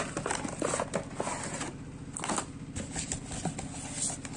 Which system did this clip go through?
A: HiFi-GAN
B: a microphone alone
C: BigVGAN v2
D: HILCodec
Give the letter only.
B